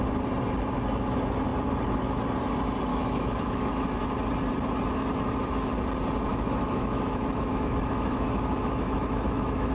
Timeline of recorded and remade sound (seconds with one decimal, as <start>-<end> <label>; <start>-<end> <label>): 0.0-2.9 recorded; 2.9-4.0 remade; 4.0-6.3 recorded; 6.3-9.7 remade